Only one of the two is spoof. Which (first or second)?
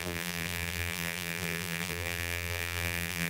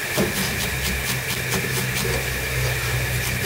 first